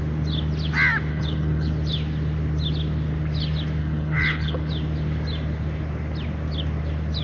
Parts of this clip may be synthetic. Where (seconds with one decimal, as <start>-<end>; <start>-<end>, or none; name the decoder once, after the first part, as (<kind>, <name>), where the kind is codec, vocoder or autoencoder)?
1.1-1.7 (codec, HILCodec); 3.8-4.7